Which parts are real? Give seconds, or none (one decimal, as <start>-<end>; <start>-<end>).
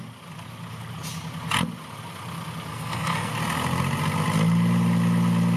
0.0-2.7; 3.3-5.6